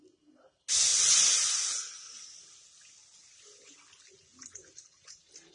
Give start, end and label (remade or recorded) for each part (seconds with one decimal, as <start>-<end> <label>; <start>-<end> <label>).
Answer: 0.0-5.5 recorded

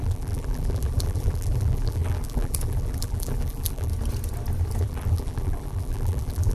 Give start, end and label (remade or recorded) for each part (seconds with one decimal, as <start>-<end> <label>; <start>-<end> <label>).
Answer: 0.0-3.9 remade; 3.9-4.8 recorded; 4.8-6.5 remade

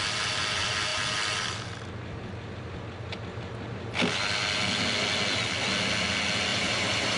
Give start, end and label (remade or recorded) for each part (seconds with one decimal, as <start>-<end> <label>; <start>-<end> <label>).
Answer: 0.0-6.5 recorded; 6.5-7.2 remade